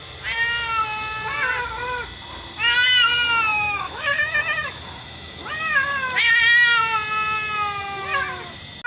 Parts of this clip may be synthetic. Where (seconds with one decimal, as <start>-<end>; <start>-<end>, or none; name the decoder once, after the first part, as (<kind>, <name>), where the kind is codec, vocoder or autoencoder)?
3.5-5.5 (autoencoder, DAC-VAE)